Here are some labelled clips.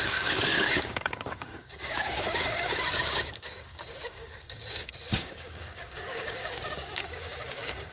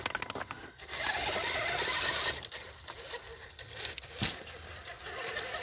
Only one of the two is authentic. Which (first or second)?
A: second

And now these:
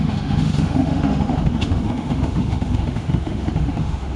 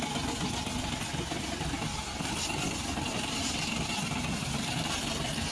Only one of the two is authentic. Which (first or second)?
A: second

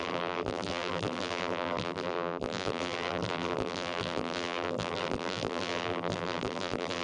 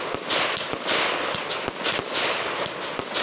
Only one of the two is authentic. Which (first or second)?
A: second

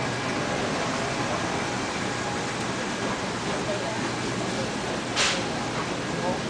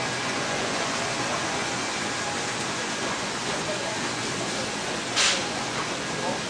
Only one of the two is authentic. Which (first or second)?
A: first